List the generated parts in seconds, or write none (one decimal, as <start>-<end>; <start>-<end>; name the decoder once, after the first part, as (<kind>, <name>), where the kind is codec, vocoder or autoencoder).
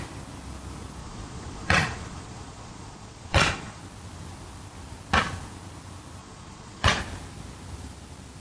1.0-3.8 (vocoder, Vocos); 6.2-7.0